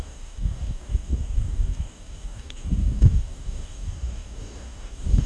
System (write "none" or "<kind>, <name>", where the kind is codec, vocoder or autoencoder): codec, DAC